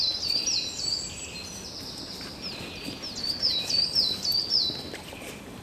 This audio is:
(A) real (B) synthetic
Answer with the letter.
A